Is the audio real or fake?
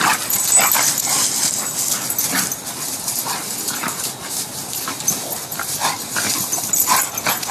real